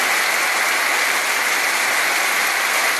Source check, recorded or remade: recorded